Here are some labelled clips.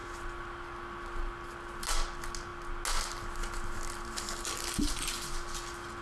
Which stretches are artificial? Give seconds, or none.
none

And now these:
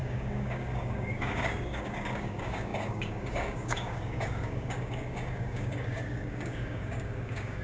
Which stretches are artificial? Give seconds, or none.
0.0-7.6 (codec, DAC)

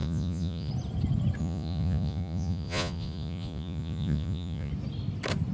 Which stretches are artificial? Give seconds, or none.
0.0-0.7 (vocoder, Vocos); 1.4-4.7

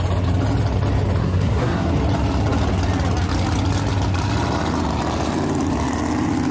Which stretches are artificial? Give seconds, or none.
1.2-1.9 (codec, SNAC)